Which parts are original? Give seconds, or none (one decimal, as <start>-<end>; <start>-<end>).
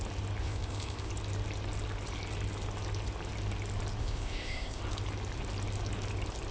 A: 0.0-0.4; 1.1-4.0; 4.8-6.5